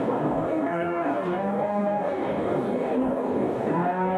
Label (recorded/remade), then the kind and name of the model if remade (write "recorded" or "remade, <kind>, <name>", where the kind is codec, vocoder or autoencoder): remade, codec, DAC